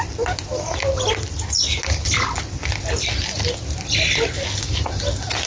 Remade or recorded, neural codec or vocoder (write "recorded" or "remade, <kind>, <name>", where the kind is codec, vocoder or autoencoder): recorded